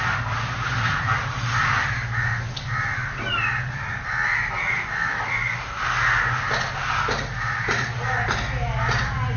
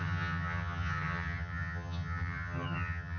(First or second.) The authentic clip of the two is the first